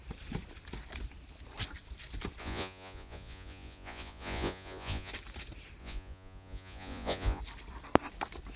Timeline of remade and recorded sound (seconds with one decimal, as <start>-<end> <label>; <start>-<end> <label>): 0.0-2.4 recorded; 2.4-5.1 remade; 5.1-5.8 recorded; 5.8-7.4 remade; 7.4-8.6 recorded